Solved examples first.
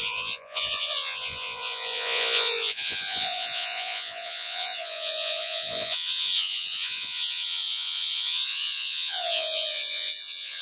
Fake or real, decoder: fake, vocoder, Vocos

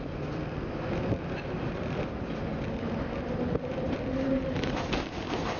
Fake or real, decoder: real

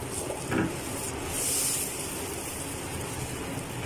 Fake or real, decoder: real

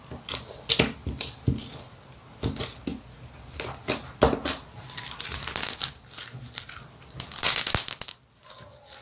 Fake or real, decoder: real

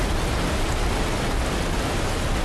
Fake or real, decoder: real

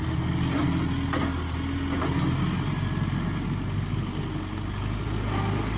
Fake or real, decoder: real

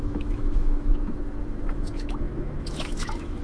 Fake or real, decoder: fake, autoencoder, DAC-VAE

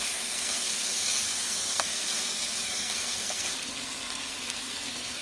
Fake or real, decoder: fake, codec, SNAC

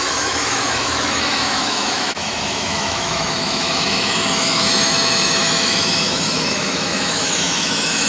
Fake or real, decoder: fake, autoencoder, DAC-VAE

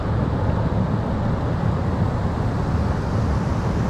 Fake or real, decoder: real